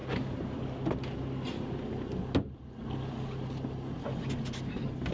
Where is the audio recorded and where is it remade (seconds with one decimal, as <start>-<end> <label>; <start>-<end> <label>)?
0.0-5.1 recorded